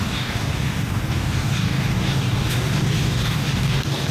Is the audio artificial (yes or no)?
yes